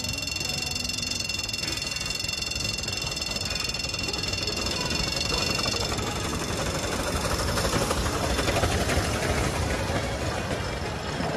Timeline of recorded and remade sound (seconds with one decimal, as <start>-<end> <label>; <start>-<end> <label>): 0.0-11.4 recorded